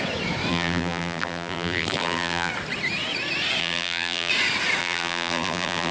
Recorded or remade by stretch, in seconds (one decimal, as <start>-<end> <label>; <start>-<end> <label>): 0.0-0.5 recorded; 0.5-2.5 remade; 2.5-3.6 recorded; 3.6-4.3 remade; 4.3-4.8 recorded; 4.8-5.9 remade